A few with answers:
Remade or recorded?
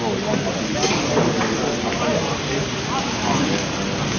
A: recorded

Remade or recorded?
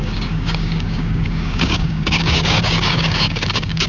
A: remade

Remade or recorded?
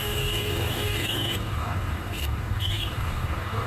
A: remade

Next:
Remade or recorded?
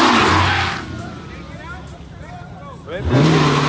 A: recorded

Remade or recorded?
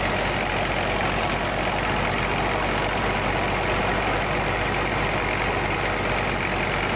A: recorded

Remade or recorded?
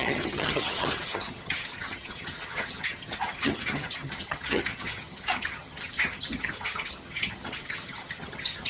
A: remade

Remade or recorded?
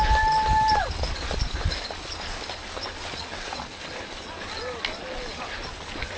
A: recorded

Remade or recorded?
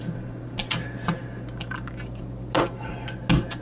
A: recorded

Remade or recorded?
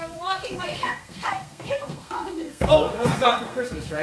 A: remade